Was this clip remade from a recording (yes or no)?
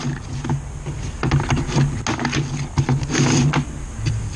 no